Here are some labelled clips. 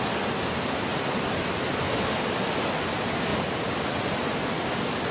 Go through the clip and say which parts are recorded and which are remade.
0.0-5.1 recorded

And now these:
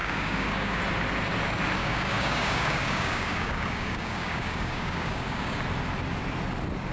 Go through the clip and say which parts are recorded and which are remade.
0.0-0.8 remade; 0.8-1.8 recorded; 1.8-5.6 remade; 5.6-6.9 recorded

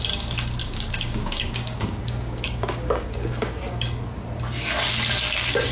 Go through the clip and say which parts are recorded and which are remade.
0.0-0.6 recorded; 0.6-4.0 remade; 4.0-5.7 recorded

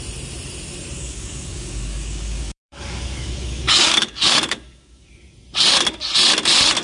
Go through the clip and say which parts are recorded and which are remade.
0.0-1.0 recorded; 1.0-5.1 remade; 5.1-6.8 recorded

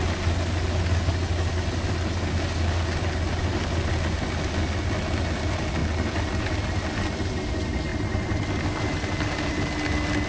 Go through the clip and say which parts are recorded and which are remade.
0.0-10.3 recorded

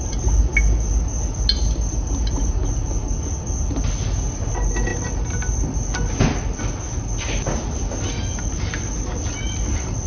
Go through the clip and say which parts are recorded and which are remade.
0.0-10.1 recorded

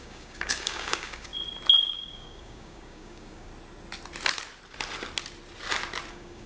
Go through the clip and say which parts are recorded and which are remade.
0.0-1.3 remade; 1.3-1.8 recorded; 1.8-3.5 remade; 3.5-6.1 recorded; 6.1-6.5 remade